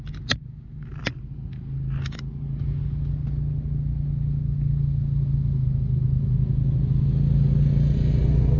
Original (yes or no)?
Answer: yes